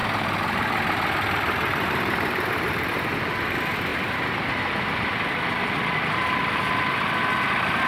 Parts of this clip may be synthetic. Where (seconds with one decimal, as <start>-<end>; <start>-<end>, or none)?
0.0-7.9